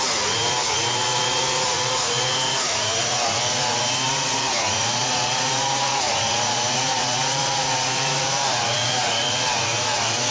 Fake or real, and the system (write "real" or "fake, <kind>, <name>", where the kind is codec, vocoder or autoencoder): fake, vocoder, Vocos